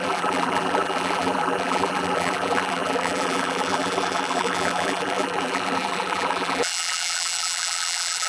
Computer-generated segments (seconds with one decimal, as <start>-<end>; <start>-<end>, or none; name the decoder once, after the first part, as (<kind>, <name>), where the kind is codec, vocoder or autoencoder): 0.0-8.3 (vocoder, BigVGAN v2)